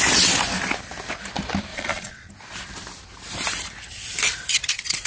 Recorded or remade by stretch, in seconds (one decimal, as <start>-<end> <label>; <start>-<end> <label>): 0.0-1.7 recorded; 1.7-2.3 remade; 2.3-4.5 recorded; 4.5-5.1 remade